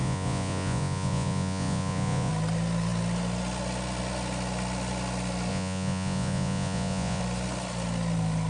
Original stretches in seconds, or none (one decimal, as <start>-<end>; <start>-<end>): 2.3-5.5; 7.2-8.5